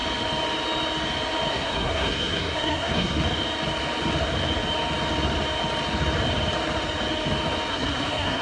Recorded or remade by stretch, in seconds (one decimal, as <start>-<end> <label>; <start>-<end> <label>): 0.0-1.5 recorded; 1.5-3.2 remade; 3.2-7.7 recorded; 7.7-8.4 remade

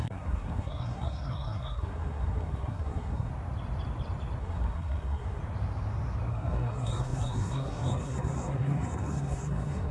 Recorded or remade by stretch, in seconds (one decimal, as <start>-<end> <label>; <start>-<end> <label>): 0.0-3.3 remade; 3.3-4.4 recorded; 4.4-5.4 remade; 5.4-6.3 recorded; 6.3-9.9 remade

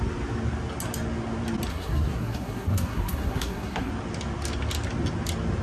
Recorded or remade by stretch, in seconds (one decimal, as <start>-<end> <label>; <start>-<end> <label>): 0.0-1.7 recorded; 1.7-3.9 remade; 3.9-5.6 recorded

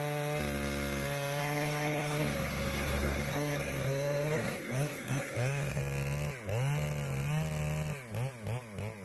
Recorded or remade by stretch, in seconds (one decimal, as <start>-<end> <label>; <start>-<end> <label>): 0.0-1.4 recorded; 1.4-5.8 remade; 5.8-9.0 recorded

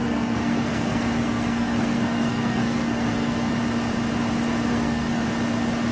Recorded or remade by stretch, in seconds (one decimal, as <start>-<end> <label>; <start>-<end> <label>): 0.0-3.5 remade; 3.5-4.7 recorded; 4.7-5.2 remade; 5.2-5.9 recorded

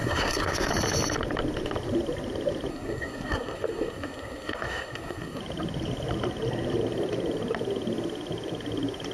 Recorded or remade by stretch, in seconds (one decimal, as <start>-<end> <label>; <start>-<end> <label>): 0.0-0.7 remade; 0.7-2.7 recorded; 2.7-5.4 remade; 5.4-9.1 recorded

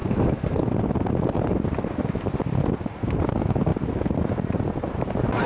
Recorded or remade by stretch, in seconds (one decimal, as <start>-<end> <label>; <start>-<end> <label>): 0.0-0.8 remade; 0.8-5.5 recorded